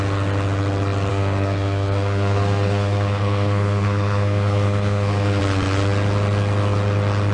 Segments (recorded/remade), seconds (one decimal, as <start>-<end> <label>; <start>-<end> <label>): 0.0-1.1 recorded; 1.1-5.4 remade; 5.4-7.3 recorded